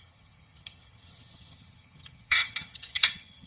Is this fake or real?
fake